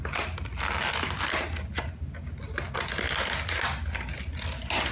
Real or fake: real